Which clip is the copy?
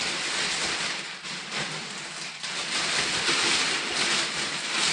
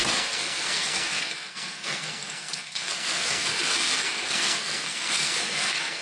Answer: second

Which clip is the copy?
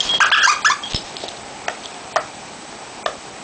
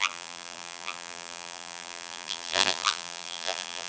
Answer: second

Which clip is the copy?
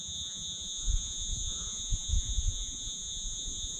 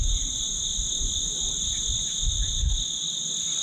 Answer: first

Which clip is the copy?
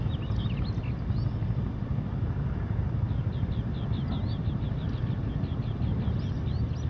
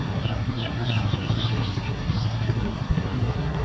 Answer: second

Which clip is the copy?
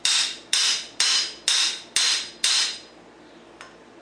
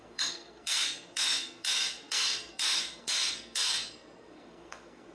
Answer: second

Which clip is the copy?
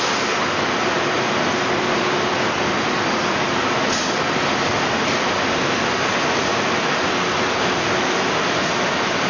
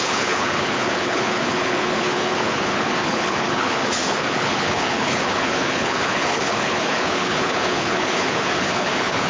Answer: second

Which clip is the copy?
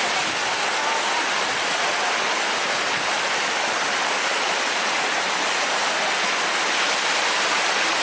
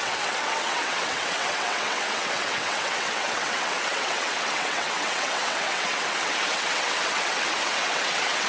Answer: second